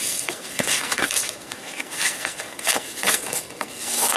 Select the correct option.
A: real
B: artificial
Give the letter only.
B